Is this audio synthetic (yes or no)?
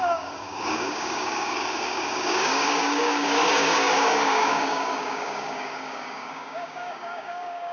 yes